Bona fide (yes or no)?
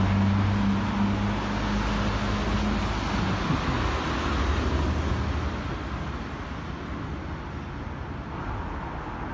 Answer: yes